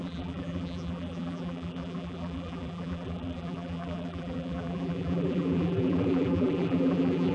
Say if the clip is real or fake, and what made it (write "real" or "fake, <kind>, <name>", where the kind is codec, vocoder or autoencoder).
fake, vocoder, BigVGAN v2